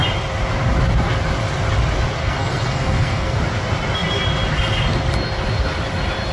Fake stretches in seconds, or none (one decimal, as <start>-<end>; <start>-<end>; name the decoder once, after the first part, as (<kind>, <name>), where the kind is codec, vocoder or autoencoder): 2.2-3.4 (codec, SNAC)